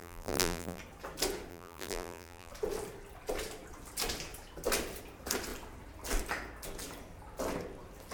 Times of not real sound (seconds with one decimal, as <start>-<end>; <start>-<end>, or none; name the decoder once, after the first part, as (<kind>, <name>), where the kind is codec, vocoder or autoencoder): 0.0-0.8 (vocoder, BigVGAN v2); 1.5-2.5